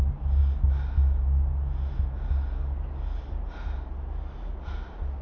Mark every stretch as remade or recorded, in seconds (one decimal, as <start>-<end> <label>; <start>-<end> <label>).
0.0-5.2 recorded